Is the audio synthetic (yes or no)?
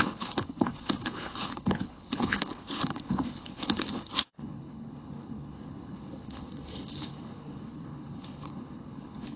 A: yes